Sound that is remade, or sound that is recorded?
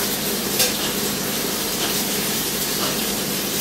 remade